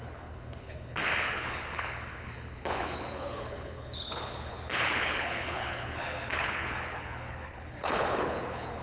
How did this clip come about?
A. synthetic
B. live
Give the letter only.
A